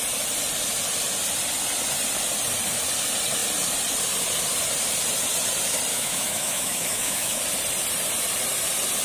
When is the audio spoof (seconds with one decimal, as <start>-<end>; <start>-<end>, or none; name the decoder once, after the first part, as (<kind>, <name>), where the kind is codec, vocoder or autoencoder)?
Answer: 5.9-7.4 (autoencoder, DAC-VAE)